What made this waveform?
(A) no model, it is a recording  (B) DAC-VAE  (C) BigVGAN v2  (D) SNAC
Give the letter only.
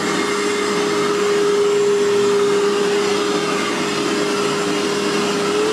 A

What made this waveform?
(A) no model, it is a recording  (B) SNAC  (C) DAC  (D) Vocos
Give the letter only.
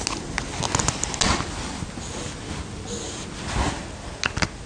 A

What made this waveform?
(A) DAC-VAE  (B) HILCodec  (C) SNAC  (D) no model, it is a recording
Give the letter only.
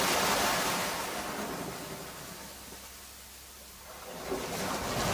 D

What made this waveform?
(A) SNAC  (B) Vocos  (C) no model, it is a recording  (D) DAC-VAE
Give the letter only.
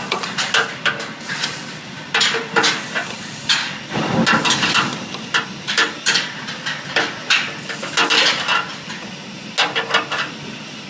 C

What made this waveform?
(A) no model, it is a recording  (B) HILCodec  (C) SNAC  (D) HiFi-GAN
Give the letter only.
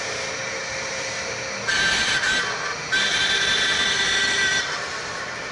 A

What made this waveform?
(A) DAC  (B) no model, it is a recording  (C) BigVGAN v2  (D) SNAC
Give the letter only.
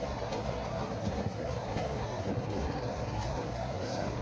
D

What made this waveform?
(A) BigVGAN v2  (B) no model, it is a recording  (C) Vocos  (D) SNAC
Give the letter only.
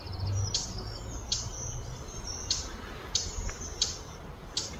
B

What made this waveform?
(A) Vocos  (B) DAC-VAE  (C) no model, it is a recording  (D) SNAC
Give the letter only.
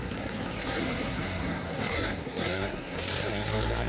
D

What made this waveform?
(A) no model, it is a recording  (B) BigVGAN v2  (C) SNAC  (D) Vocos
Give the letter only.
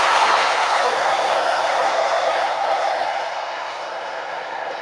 C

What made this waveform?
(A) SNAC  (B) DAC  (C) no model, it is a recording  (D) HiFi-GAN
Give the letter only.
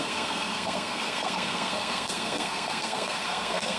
A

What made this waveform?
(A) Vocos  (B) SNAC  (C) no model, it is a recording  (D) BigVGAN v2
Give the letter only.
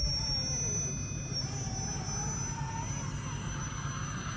C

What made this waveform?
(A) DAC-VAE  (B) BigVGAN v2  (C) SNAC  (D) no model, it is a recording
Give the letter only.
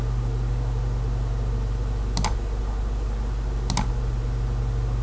D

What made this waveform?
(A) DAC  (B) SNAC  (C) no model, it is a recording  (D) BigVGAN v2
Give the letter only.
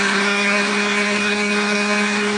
B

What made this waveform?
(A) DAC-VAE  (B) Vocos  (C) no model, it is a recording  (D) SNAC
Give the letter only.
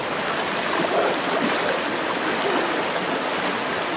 C